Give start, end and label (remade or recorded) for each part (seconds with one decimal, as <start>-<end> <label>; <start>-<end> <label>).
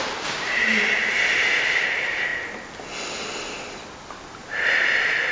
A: 0.0-2.3 remade; 2.3-4.4 recorded; 4.4-5.3 remade